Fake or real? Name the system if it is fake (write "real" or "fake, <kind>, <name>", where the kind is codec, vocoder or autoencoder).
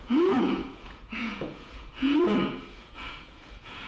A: fake, vocoder, Vocos